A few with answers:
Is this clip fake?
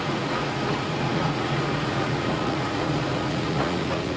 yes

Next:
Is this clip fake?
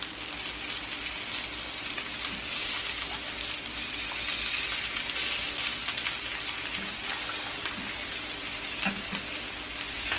no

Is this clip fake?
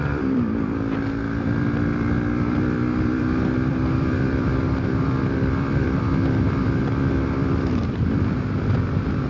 yes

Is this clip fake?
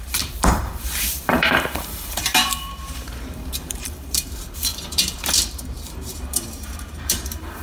yes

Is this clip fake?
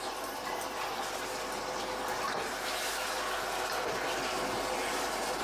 no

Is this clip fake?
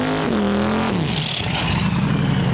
no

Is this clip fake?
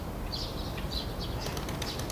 no